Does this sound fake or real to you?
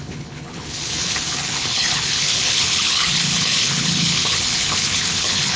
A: fake